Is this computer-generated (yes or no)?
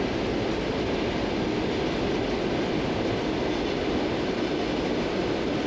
no